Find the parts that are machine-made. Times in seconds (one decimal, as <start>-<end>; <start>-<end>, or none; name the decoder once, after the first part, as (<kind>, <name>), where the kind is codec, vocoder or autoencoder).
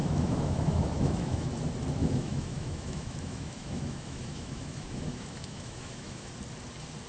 0.0-1.5 (autoencoder, DAC-VAE); 2.0-6.3